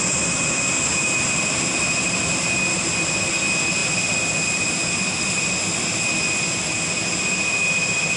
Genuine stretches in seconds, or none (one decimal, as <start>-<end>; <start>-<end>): 0.0-8.2